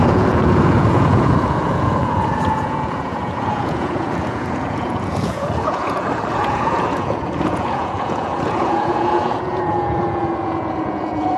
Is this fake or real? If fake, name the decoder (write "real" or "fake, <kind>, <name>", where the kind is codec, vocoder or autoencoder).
fake, vocoder, Vocos